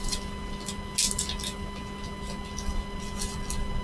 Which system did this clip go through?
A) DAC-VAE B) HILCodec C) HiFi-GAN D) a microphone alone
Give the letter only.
D